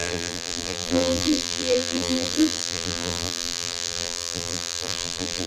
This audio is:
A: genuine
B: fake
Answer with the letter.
B